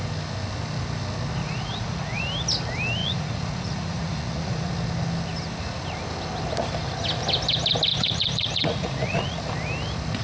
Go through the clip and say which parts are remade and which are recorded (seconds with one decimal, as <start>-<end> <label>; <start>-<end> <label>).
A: 0.0-1.4 recorded; 1.4-2.2 remade; 2.2-3.0 recorded; 3.0-4.7 remade; 4.7-7.9 recorded; 7.9-9.5 remade; 9.5-10.2 recorded